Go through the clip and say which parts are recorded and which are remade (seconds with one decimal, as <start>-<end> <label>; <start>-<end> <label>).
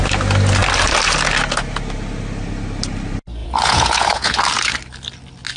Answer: 0.0-3.4 recorded; 3.4-4.4 remade; 4.4-5.6 recorded